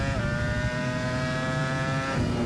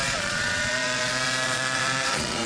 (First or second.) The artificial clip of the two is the second